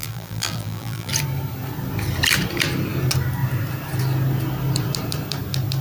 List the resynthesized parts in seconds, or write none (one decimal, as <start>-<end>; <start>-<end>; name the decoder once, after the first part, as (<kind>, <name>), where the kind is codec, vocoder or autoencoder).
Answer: 0.0-1.1 (vocoder, BigVGAN v2)